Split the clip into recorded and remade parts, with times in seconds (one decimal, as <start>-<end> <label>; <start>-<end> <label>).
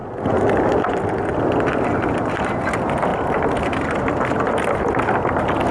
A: 0.0-3.1 recorded; 3.1-4.9 remade; 4.9-5.7 recorded